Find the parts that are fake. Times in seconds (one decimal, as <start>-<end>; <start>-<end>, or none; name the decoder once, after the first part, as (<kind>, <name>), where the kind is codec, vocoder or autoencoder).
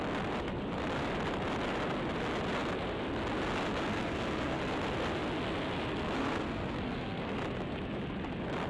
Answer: 3.9-4.6 (codec, SNAC); 6.2-7.3